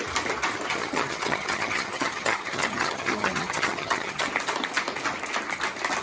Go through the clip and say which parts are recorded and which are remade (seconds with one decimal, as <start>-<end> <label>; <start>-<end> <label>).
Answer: 0.0-0.7 recorded; 0.7-4.3 remade; 4.3-6.0 recorded

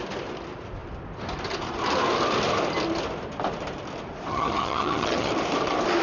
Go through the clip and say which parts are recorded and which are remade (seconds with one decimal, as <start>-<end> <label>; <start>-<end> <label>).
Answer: 0.0-4.3 recorded; 4.3-5.3 remade; 5.3-6.0 recorded

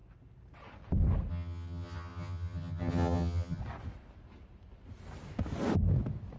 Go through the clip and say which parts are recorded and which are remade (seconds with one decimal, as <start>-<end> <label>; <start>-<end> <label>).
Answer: 0.0-1.3 recorded; 1.3-3.6 remade; 3.6-6.4 recorded

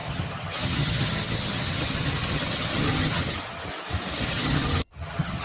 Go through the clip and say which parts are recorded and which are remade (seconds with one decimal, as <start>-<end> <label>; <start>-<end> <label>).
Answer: 0.0-3.7 remade; 3.7-4.2 recorded; 4.2-5.4 remade

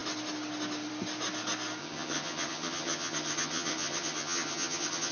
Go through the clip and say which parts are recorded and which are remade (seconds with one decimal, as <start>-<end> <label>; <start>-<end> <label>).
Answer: 0.0-1.8 recorded; 1.8-5.1 remade